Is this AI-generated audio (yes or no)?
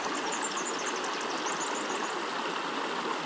no